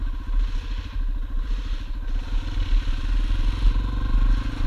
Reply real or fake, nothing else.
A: real